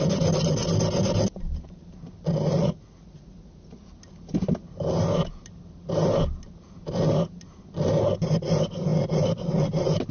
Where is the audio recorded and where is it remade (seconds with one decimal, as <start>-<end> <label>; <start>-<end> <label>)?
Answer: 0.0-2.6 recorded; 2.6-3.8 remade; 3.8-10.1 recorded